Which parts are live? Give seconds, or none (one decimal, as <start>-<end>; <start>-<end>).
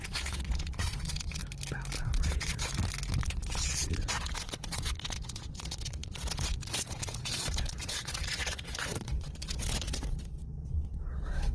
1.4-2.0; 2.7-3.2